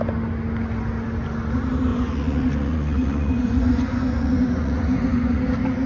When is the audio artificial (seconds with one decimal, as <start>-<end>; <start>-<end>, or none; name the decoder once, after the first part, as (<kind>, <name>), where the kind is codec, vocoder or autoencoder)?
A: 1.9-5.4 (vocoder, Vocos)